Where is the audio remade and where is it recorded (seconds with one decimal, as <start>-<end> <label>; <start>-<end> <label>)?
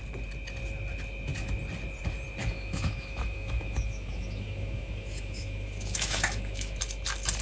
0.0-2.4 recorded; 2.4-6.8 remade; 6.8-7.4 recorded